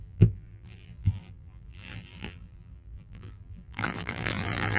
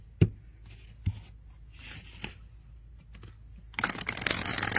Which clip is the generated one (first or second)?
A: first